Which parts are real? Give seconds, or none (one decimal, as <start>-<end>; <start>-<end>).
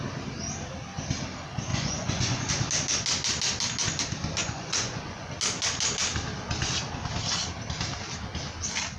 0.0-1.7; 2.5-4.4; 5.3-9.0